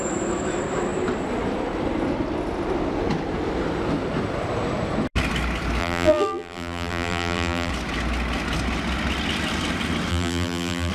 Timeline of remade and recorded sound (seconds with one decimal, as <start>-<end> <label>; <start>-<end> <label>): 0.0-5.8 recorded; 5.8-7.7 remade; 7.7-10.1 recorded; 10.1-10.9 remade